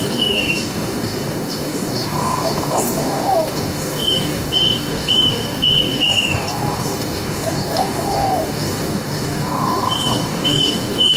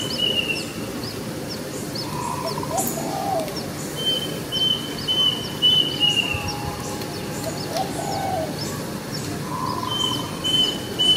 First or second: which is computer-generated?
first